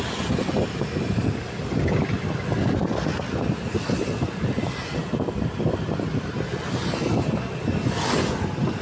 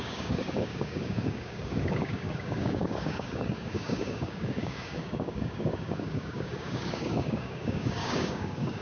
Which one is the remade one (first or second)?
second